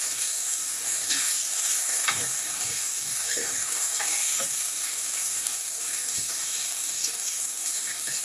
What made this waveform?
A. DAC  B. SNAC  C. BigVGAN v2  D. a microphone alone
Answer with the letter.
A